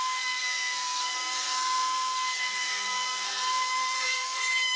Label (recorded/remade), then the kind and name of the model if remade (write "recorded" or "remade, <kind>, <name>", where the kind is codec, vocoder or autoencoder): remade, codec, SNAC